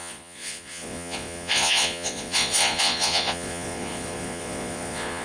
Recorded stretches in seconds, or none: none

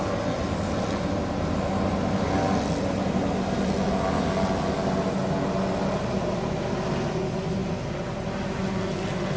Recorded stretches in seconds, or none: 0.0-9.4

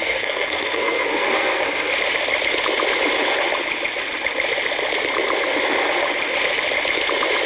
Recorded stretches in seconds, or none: 1.9-7.5